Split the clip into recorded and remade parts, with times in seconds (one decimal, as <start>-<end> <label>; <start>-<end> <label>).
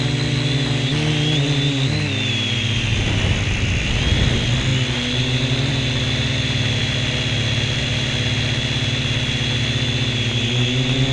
0.0-11.1 recorded